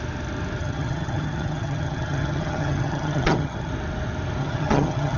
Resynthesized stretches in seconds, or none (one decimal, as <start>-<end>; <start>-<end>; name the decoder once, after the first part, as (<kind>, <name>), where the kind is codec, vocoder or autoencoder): 0.6-3.7 (vocoder, HiFi-GAN); 4.4-5.2